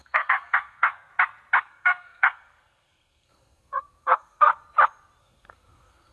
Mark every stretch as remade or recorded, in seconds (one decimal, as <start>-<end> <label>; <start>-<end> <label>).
0.0-1.1 remade; 1.1-1.6 recorded; 1.6-4.5 remade; 4.5-5.2 recorded; 5.2-6.1 remade